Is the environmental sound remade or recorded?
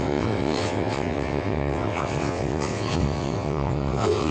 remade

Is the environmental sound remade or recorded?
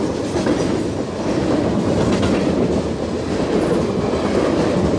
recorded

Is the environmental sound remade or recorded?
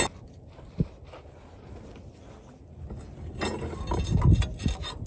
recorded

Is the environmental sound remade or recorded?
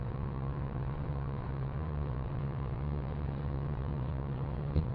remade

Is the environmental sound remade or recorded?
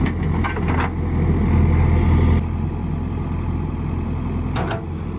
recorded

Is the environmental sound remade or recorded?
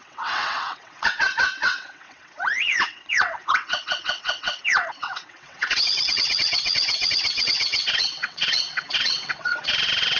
remade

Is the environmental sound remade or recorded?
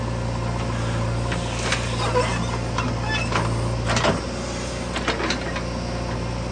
recorded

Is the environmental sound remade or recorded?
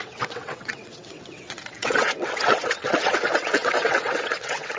remade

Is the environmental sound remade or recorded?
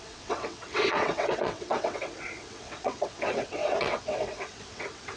remade